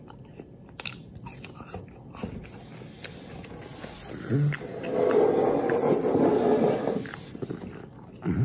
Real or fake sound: real